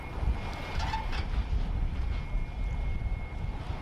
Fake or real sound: real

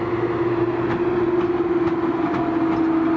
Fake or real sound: real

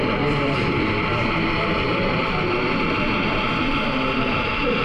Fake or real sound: fake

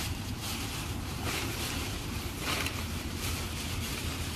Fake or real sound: fake